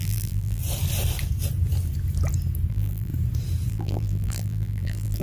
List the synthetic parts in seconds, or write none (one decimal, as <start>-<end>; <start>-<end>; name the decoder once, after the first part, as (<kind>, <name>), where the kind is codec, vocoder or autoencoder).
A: 0.0-0.6 (vocoder, BigVGAN v2); 2.7-3.1; 3.7-5.2